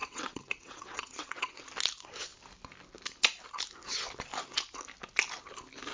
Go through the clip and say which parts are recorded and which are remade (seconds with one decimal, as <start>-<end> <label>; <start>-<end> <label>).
0.0-1.6 remade; 1.6-5.9 recorded